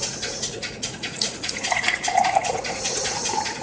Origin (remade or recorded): remade